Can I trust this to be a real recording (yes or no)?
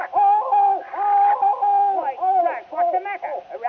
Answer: yes